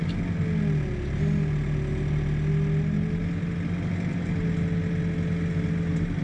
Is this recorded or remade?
recorded